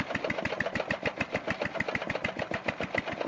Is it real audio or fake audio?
real